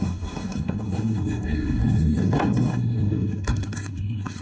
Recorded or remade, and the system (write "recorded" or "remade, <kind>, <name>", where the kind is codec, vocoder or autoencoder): remade, codec, SNAC